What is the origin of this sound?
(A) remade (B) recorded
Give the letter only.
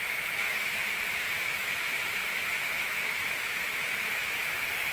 A